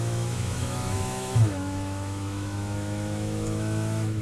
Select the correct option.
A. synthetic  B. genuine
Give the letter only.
A